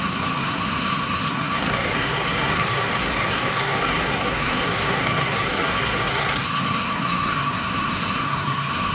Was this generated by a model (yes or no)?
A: yes